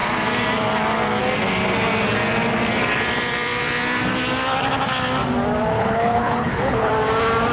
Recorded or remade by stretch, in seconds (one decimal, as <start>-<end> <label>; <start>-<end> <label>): 0.0-5.7 recorded; 5.7-6.9 remade; 6.9-7.5 recorded